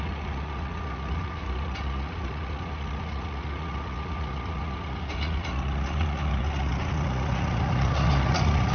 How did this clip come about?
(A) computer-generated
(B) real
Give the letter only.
A